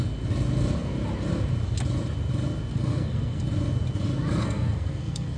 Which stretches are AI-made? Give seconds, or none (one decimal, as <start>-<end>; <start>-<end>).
2.7-3.4; 4.4-5.4